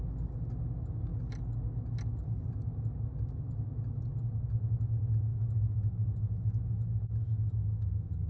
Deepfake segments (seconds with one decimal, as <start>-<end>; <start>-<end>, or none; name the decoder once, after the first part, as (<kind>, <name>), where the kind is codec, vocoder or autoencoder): 5.3-8.3 (autoencoder, DAC-VAE)

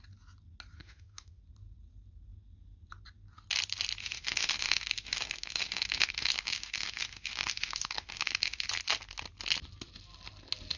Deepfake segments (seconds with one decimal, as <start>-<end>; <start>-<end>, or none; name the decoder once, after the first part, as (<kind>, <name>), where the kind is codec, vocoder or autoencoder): 0.8-1.4 (autoencoder, DAC-VAE); 4.0-8.7